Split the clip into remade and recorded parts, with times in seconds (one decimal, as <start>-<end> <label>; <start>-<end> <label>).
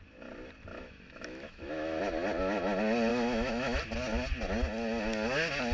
0.0-0.7 recorded; 0.7-2.0 remade; 2.0-3.1 recorded; 3.1-3.8 remade; 3.8-5.7 recorded